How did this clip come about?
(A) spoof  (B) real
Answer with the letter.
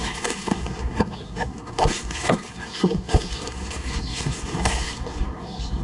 A